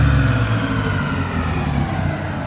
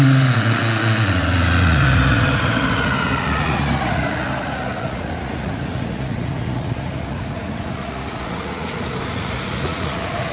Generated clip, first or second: second